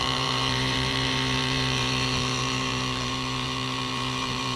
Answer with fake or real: fake